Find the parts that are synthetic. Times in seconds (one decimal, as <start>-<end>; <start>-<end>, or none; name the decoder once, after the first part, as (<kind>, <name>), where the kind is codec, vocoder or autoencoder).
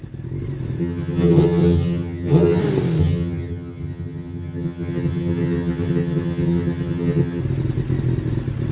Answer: 0.8-2.6 (vocoder, HiFi-GAN); 3.0-7.4